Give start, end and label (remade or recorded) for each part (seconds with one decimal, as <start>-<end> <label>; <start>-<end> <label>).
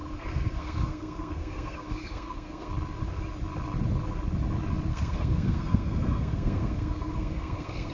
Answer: 0.0-2.7 remade; 2.7-4.9 recorded; 4.9-7.9 remade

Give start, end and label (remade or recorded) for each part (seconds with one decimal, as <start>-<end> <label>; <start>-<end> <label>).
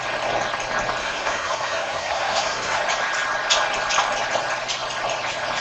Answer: 0.0-1.0 recorded; 1.0-2.8 remade; 2.8-5.6 recorded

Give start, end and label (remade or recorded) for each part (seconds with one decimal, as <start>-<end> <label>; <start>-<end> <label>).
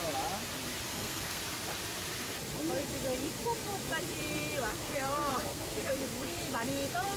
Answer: 0.0-0.9 recorded; 0.9-1.4 remade; 1.4-4.7 recorded; 4.7-6.4 remade; 6.4-7.2 recorded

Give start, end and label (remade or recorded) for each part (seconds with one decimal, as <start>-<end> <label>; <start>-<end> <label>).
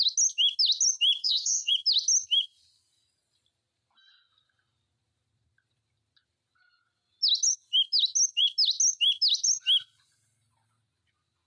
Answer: 0.0-1.2 recorded; 1.2-1.7 remade; 1.7-11.5 recorded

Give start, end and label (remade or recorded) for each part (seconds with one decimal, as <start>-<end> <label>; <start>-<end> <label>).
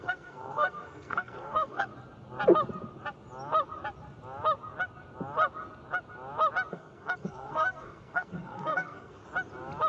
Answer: 0.0-1.9 remade; 1.9-6.7 recorded; 6.7-9.2 remade; 9.2-9.9 recorded